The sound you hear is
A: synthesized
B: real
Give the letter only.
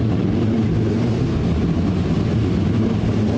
B